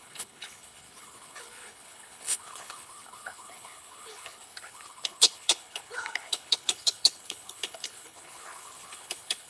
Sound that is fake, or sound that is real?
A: fake